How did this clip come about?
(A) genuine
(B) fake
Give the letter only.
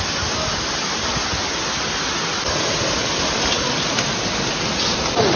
A